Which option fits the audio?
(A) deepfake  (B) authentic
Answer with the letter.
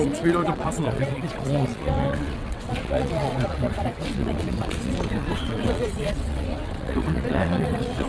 A